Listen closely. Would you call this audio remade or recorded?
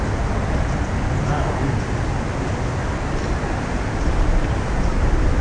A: recorded